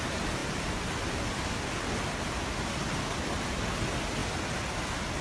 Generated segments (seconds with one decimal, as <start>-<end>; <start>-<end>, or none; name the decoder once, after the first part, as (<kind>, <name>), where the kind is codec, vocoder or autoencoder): none

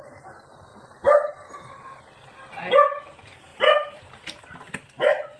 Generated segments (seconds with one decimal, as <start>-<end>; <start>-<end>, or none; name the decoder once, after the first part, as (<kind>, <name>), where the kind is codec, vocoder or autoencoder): 3.5-4.4 (vocoder, BigVGAN v2)

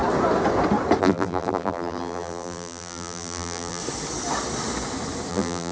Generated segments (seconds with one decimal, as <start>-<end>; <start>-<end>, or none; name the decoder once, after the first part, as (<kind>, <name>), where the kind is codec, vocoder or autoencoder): 1.0-3.8 (vocoder, BigVGAN v2); 5.3-5.7

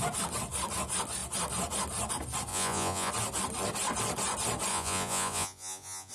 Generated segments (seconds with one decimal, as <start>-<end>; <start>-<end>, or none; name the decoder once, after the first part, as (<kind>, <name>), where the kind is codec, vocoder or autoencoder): 2.5-3.1 (vocoder, Vocos); 4.7-6.1

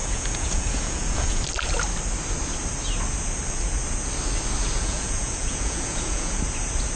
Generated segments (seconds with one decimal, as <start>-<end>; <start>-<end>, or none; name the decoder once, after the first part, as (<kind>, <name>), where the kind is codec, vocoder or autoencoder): 0.0-1.4 (vocoder, Vocos); 4.6-6.4

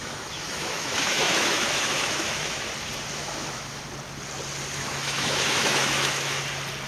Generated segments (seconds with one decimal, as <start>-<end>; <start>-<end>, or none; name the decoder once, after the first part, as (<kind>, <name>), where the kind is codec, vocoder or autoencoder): 0.0-2.7 (autoencoder, DAC-VAE); 3.2-3.8; 4.8-6.4